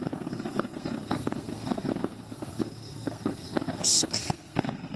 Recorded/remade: remade